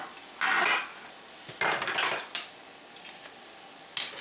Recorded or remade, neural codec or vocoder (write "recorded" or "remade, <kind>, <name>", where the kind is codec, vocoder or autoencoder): recorded